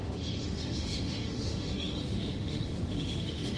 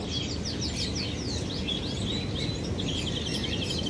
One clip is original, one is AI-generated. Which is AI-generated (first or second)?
first